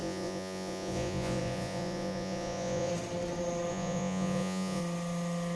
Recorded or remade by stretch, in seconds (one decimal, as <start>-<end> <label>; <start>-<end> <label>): 0.0-2.9 remade; 2.9-3.7 recorded; 3.7-4.8 remade; 4.8-5.6 recorded